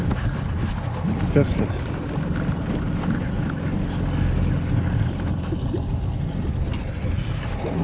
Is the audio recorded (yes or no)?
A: yes